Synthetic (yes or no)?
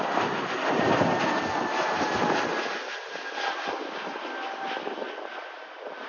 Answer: no